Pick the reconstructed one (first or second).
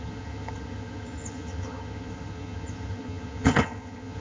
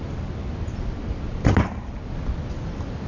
first